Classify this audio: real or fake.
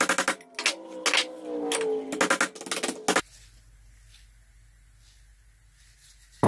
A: real